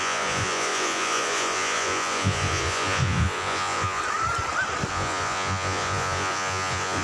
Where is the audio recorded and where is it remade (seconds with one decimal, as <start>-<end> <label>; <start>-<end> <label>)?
0.0-4.0 remade; 4.0-4.9 recorded; 4.9-7.0 remade

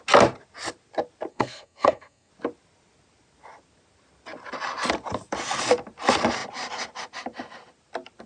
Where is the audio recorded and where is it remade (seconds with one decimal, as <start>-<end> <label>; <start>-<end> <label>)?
0.0-1.3 recorded; 1.3-2.3 remade; 2.3-8.3 recorded

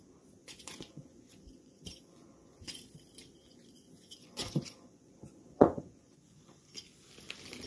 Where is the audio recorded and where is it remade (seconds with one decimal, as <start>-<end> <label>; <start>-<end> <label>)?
0.0-0.4 recorded; 0.4-2.8 remade; 2.8-3.4 recorded; 3.4-6.7 remade; 6.7-7.7 recorded

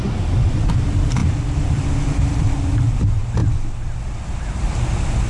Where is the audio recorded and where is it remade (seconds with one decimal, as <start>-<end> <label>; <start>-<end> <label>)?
0.0-1.2 recorded; 1.2-2.5 remade; 2.5-5.3 recorded